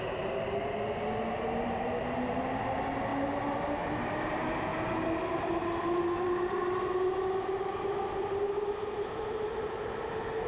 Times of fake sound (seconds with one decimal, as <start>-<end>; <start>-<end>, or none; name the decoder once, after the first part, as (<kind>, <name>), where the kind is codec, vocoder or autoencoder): none